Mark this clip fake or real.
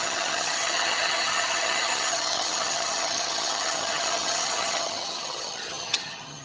fake